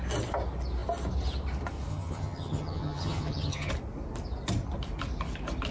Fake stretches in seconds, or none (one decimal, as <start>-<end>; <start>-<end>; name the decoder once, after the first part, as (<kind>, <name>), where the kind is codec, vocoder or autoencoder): 1.9-3.7 (vocoder, HiFi-GAN)